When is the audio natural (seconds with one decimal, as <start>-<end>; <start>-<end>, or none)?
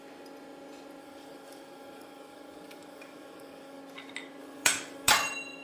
0.0-1.0; 3.8-4.4; 5.1-5.6